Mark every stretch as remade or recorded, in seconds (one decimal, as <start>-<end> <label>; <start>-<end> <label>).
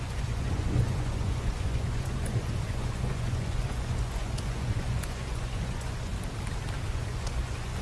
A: 0.0-6.1 remade; 6.1-6.9 recorded; 6.9-7.8 remade